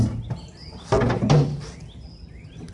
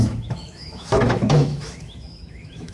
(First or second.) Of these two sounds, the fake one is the second